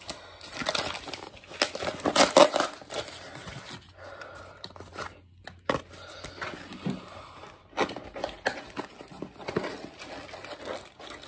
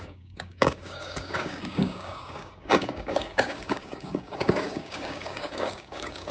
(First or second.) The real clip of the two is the first